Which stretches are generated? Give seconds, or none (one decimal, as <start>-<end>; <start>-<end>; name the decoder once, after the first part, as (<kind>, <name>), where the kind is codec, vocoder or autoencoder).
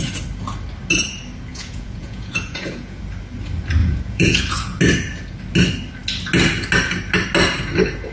1.5-3.0 (vocoder, Vocos); 3.8-4.8